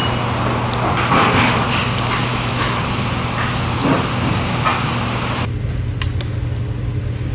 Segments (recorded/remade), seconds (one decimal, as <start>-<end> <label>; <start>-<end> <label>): 0.0-2.3 recorded; 2.3-2.8 remade; 2.8-7.3 recorded